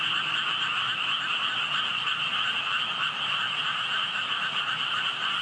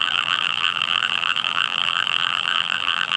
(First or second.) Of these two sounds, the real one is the first